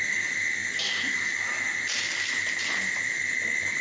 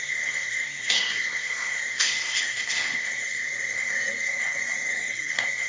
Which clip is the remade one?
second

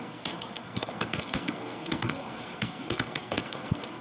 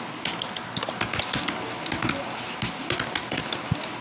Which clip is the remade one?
first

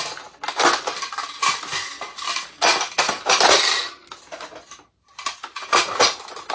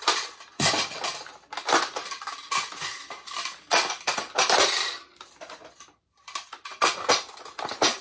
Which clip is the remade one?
second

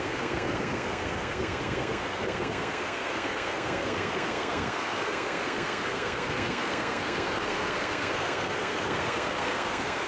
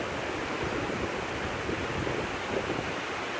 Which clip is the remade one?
first